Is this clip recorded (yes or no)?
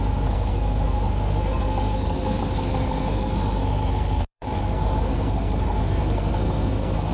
no